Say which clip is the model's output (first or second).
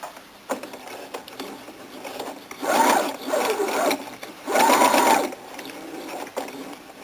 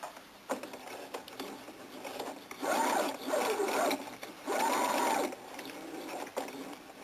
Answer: first